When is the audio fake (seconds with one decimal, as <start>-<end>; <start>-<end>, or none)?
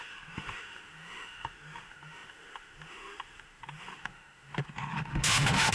0.0-5.7